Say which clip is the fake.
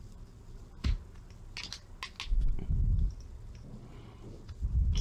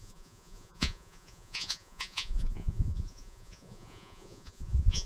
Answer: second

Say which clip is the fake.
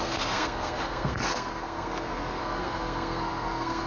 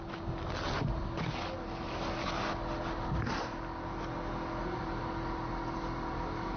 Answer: first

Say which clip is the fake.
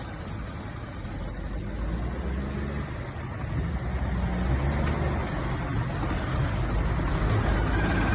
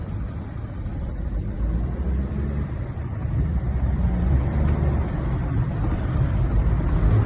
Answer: second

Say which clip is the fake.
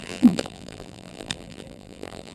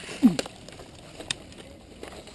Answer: first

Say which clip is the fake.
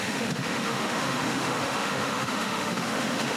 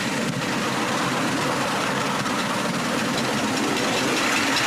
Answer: first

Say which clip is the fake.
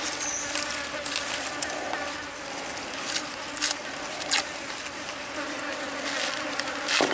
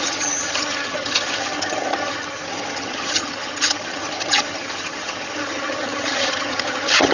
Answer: second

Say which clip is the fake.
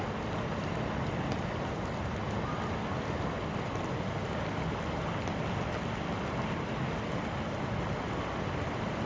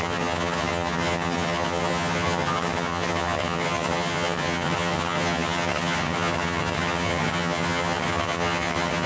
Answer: second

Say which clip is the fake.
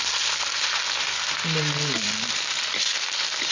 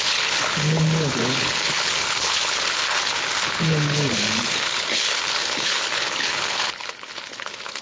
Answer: second